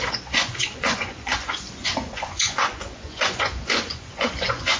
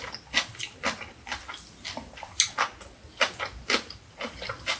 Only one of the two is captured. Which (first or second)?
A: second